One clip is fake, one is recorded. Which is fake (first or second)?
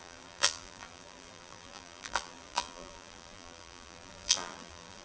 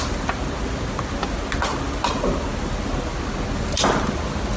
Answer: first